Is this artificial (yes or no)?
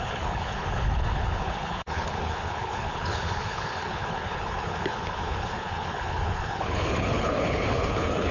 yes